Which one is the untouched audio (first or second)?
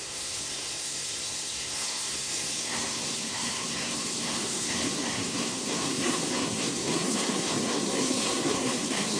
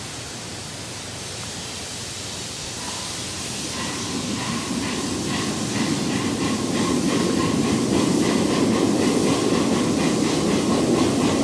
second